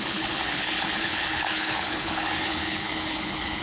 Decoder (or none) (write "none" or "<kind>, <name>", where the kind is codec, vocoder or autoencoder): codec, HILCodec